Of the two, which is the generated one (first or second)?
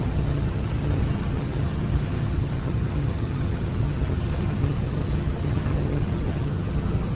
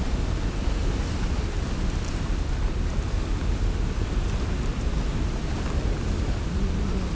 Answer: first